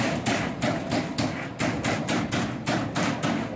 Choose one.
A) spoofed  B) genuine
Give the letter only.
B